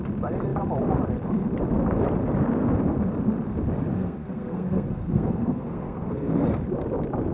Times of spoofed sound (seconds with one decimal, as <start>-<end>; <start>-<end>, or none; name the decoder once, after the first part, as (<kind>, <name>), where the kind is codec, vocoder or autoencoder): 3.9-6.3 (codec, SNAC)